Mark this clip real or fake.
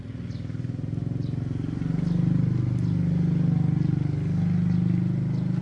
real